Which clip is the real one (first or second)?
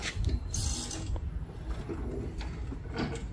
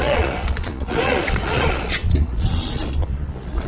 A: first